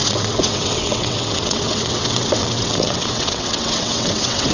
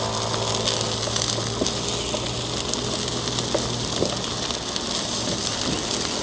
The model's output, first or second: first